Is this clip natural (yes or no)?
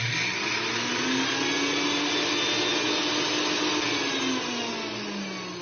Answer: yes